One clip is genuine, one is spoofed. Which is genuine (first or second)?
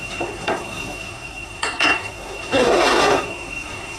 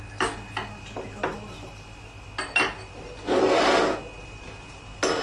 second